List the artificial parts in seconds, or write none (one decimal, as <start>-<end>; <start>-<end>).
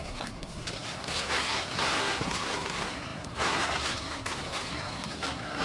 0.0-5.6